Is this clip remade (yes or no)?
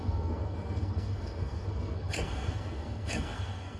yes